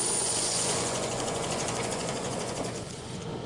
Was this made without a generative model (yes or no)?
no